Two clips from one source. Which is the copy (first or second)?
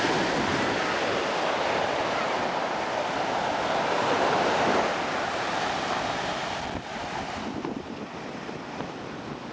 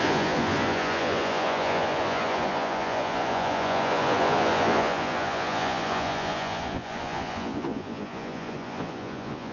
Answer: second